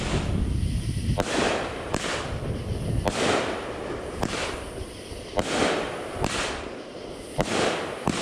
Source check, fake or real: real